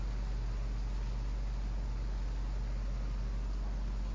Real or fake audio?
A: real